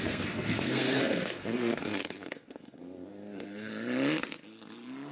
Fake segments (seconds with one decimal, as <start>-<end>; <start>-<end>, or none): 0.0-3.7